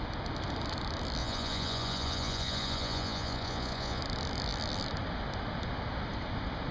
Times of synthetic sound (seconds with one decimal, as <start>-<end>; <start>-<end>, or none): 1.2-4.0

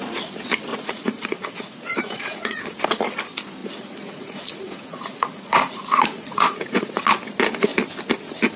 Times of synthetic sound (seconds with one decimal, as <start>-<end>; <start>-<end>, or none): 0.7-2.6; 3.6-7.0

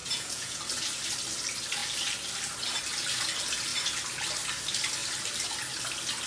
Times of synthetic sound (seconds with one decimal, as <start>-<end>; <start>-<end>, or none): 0.0-0.6

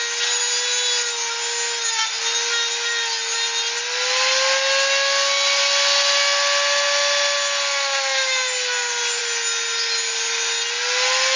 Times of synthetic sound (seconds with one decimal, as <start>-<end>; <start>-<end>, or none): none